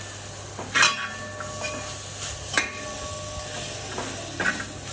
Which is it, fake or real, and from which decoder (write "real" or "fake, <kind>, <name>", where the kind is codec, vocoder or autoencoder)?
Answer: real